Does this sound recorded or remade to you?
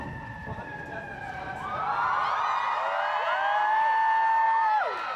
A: recorded